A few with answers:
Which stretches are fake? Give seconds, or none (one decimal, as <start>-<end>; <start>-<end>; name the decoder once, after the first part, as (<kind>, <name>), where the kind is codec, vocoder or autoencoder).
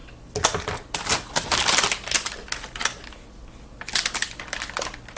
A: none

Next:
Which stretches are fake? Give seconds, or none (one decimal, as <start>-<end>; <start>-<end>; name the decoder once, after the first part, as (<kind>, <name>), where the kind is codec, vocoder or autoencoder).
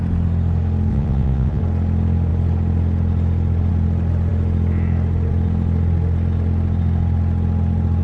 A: 0.9-1.6 (vocoder, WaveNeXt)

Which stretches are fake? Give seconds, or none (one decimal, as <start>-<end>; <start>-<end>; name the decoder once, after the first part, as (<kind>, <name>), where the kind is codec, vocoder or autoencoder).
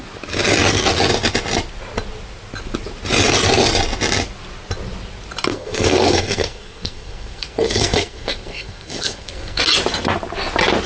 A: 5.5-9.6 (codec, SNAC)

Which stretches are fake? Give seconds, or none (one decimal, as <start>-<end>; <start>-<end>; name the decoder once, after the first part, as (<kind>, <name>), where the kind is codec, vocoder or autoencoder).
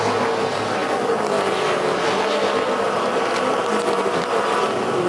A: none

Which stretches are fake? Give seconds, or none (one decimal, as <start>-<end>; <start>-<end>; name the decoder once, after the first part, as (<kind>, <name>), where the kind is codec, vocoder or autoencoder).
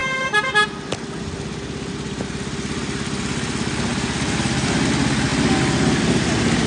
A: 3.9-4.4 (vocoder, BigVGAN v2)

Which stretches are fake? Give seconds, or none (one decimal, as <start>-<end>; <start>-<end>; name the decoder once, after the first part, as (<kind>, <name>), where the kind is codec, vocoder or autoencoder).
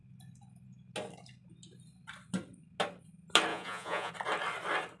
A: 3.5-4.1 (vocoder, Vocos)